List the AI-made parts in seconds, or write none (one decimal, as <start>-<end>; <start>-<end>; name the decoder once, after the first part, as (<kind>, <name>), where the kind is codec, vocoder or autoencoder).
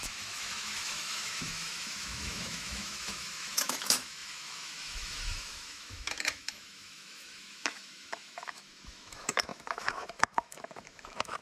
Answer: 0.0-11.4 (autoencoder, DAC-VAE)